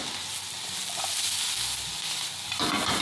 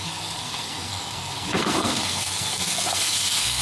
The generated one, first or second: second